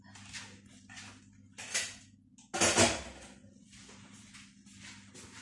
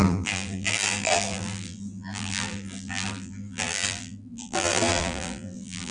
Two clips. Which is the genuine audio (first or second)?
first